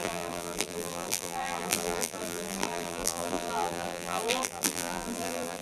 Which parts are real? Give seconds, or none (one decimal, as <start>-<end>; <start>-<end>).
none